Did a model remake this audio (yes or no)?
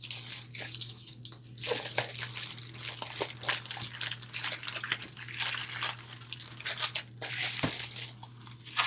no